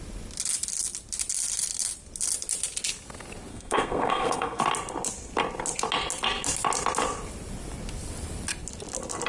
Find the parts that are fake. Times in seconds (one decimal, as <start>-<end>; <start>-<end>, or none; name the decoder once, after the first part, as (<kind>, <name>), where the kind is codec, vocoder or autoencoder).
3.5-4.6 (codec, SNAC)